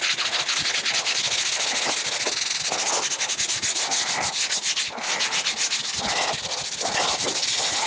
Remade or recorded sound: recorded